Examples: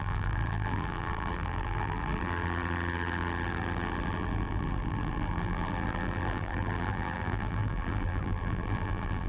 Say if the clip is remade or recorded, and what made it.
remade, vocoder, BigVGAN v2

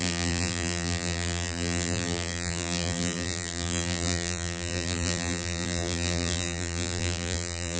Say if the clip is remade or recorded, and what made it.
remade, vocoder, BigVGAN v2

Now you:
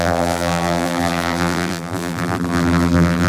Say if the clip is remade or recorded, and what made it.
remade, vocoder, BigVGAN v2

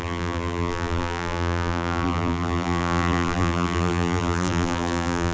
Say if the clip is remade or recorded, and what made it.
remade, vocoder, BigVGAN v2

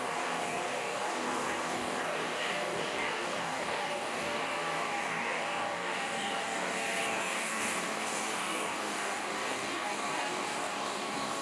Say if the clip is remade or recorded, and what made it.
remade, codec, DAC